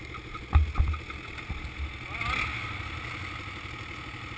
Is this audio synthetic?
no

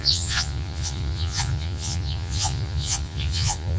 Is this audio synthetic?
yes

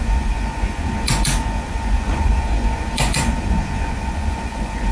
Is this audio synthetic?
yes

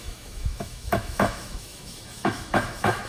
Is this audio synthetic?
yes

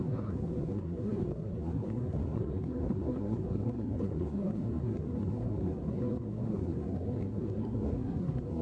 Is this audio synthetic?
yes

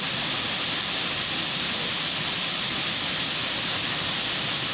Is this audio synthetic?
no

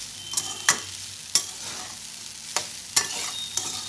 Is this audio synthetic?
no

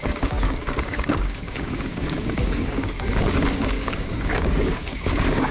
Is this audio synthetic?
yes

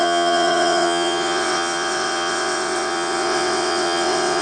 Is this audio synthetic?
yes